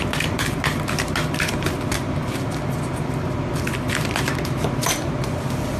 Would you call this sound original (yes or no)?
yes